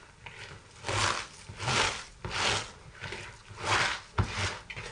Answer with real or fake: real